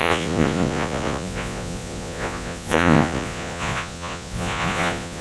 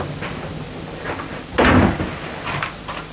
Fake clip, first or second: first